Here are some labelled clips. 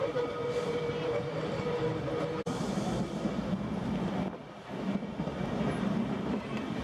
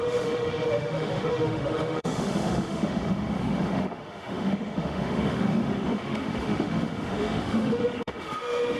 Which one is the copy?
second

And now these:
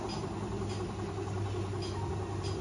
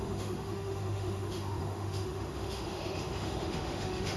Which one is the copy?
second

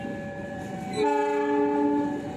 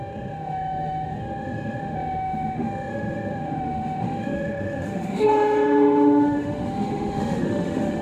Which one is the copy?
second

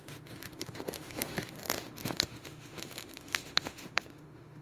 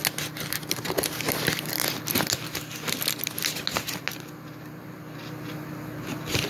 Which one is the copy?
first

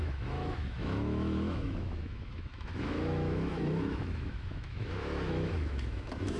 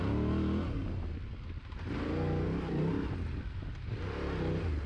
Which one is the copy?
first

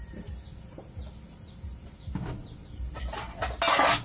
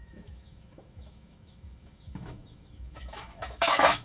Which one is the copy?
second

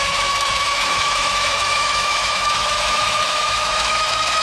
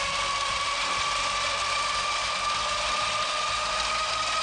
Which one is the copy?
first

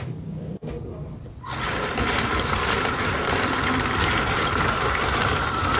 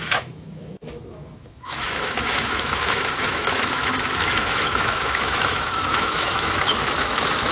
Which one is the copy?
second